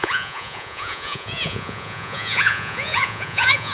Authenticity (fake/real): fake